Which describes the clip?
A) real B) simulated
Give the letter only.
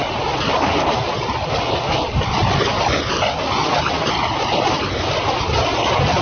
A